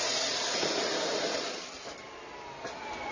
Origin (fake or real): real